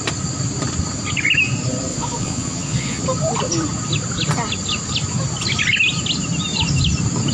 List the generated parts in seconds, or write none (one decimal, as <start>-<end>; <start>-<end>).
1.9-3.0